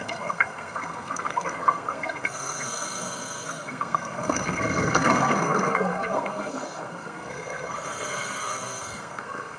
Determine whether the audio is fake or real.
fake